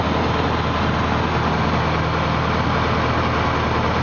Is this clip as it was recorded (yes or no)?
yes